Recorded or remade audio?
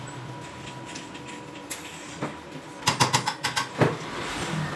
recorded